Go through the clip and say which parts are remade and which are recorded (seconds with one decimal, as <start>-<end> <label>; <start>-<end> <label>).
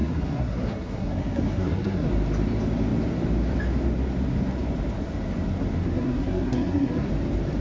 0.0-2.1 remade; 2.1-5.8 recorded; 5.8-7.1 remade; 7.1-7.6 recorded